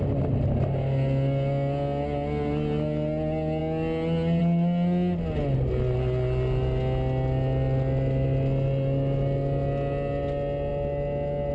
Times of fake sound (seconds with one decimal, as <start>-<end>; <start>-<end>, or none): none